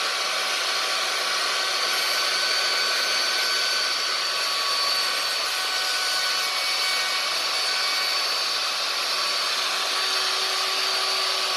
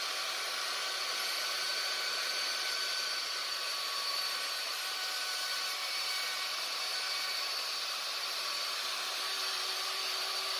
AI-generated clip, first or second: second